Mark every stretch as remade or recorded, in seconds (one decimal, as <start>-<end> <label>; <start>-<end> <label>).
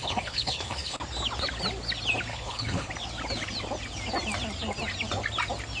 0.0-1.0 remade; 1.0-2.3 recorded; 2.3-2.9 remade; 2.9-5.8 recorded